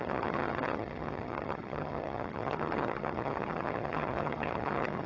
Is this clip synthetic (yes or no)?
yes